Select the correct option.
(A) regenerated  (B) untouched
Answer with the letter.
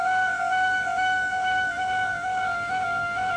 A